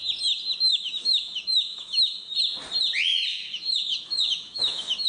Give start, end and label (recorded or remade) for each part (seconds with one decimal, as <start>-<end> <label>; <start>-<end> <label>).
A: 0.0-0.7 recorded; 0.7-2.4 remade; 2.4-3.3 recorded; 3.3-5.1 remade